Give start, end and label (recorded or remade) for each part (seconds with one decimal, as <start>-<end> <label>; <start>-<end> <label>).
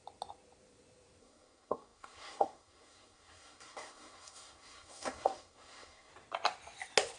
0.0-1.2 recorded; 1.2-6.1 remade; 6.1-7.2 recorded